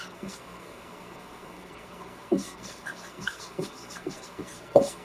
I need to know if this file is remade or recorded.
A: remade